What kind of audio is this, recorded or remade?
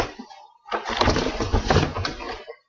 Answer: recorded